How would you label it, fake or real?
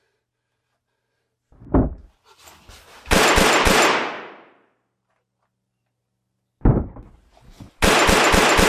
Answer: real